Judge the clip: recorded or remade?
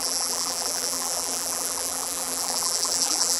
remade